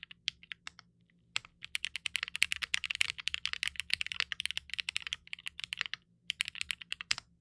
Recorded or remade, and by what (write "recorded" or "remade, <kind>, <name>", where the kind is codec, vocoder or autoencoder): recorded